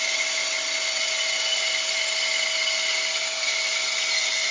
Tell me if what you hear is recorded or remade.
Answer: recorded